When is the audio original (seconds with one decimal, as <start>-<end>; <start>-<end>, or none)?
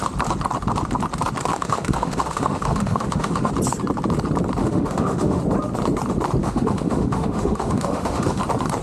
0.0-1.5; 3.5-4.6; 5.4-6.4; 8.4-8.8